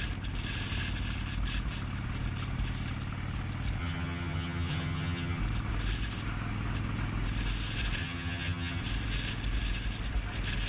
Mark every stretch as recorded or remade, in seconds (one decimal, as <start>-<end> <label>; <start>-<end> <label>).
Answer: 0.0-3.8 recorded; 3.8-5.4 remade; 5.4-8.0 recorded; 8.0-8.8 remade; 8.8-10.7 recorded